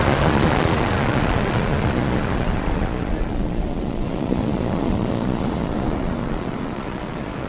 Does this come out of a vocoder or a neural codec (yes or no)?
yes